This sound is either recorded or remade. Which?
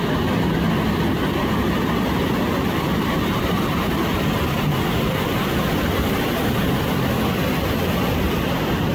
remade